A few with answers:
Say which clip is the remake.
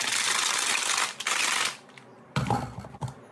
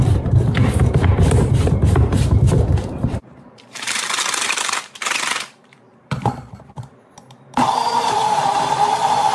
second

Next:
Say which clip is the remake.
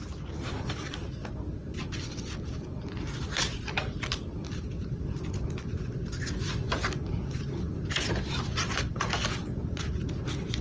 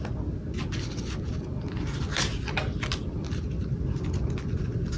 first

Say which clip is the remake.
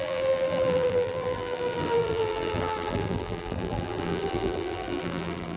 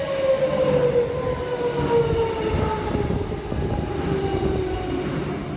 first